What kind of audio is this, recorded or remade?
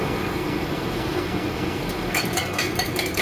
remade